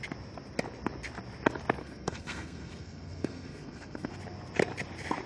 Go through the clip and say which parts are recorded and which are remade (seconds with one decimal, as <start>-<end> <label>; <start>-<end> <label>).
0.0-1.8 recorded; 1.8-4.1 remade; 4.1-5.3 recorded